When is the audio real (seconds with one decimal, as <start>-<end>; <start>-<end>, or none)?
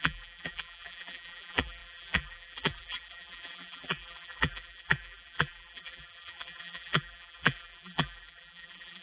none